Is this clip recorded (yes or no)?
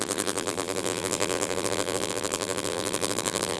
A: no